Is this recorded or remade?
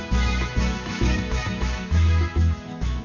remade